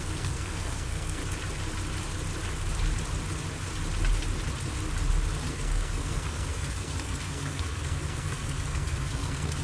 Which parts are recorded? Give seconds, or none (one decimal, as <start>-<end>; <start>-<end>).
1.2-5.5